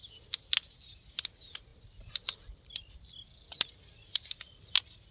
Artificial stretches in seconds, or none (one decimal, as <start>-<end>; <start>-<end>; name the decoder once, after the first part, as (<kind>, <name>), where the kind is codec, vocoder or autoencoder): none

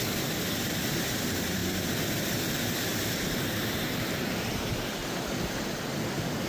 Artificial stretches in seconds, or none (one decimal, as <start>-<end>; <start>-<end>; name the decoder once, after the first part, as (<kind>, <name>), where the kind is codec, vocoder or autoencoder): none

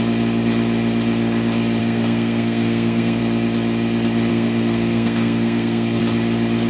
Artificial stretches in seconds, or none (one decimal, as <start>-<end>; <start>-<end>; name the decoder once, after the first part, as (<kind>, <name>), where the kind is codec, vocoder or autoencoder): 1.8-3.2 (codec, SNAC); 4.3-6.0

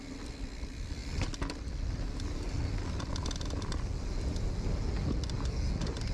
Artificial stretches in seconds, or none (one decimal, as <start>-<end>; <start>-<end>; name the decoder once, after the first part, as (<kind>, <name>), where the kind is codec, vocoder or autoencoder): none

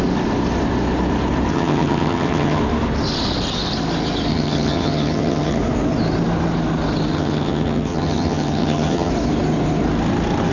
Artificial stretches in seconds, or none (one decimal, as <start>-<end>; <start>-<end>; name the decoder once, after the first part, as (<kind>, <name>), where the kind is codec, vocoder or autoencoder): 1.5-2.6 (vocoder, HiFi-GAN); 4.3-5.6; 7.1-9.1